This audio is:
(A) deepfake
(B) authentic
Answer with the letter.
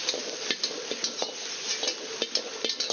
B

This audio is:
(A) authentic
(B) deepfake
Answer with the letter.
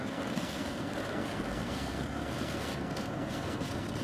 B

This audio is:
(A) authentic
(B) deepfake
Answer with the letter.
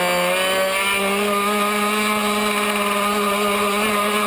A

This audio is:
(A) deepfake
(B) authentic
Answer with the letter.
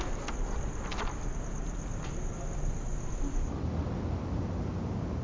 B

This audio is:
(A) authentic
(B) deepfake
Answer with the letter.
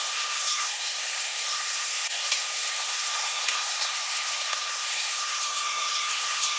B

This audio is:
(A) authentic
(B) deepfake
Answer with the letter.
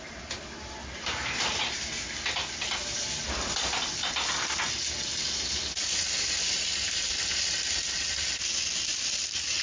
A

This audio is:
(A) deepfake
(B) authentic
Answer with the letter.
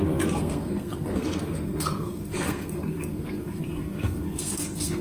A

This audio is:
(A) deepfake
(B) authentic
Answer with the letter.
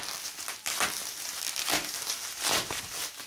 B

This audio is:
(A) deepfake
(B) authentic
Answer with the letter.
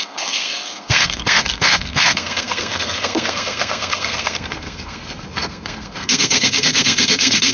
A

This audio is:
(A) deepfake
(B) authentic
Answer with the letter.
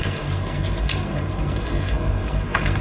A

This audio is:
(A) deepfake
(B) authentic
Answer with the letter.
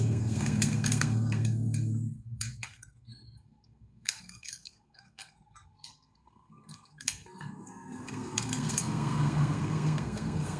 A